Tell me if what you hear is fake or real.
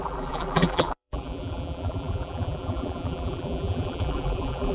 fake